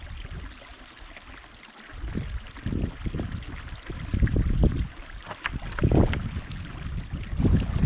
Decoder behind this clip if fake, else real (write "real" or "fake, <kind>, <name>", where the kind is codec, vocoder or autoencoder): real